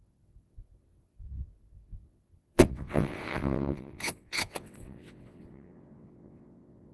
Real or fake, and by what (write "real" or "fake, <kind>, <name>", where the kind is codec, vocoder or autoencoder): fake, vocoder, WaveNeXt